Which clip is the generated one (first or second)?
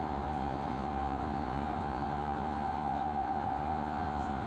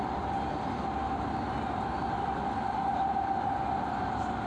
first